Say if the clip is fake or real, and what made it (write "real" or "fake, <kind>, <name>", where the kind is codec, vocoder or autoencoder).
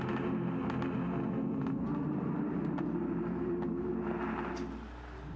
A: real